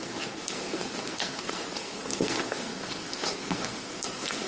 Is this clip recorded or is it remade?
remade